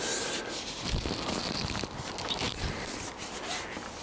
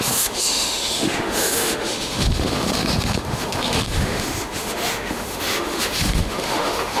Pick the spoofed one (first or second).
second